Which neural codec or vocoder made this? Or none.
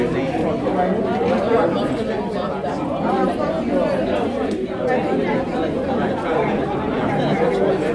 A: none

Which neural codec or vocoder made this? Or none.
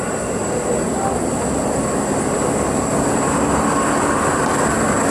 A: none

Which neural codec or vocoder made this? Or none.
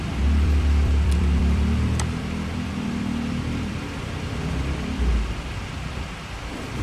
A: vocoder, BigVGAN v2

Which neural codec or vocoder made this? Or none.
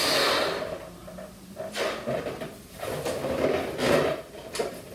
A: none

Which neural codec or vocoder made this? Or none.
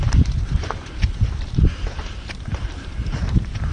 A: vocoder, BigVGAN v2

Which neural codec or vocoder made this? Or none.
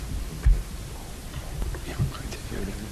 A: none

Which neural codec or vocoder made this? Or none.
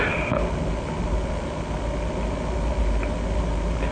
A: none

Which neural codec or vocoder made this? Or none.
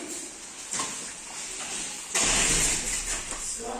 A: none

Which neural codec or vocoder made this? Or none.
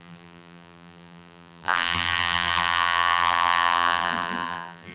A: vocoder, BigVGAN v2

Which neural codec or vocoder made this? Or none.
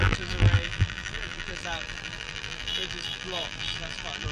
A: vocoder, BigVGAN v2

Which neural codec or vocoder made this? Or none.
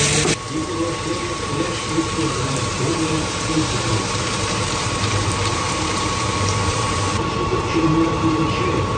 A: vocoder, BigVGAN v2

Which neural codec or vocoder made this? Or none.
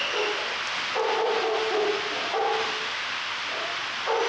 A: none